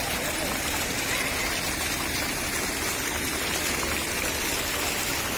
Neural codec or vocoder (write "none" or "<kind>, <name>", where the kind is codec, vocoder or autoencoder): none